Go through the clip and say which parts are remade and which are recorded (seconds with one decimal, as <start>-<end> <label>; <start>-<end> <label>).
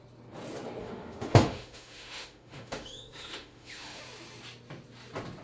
0.0-0.8 recorded; 0.8-4.0 remade; 4.0-5.4 recorded